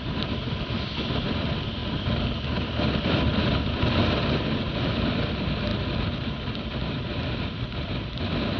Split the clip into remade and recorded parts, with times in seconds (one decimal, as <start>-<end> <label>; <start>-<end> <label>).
0.0-1.8 remade; 1.8-2.7 recorded; 2.7-8.6 remade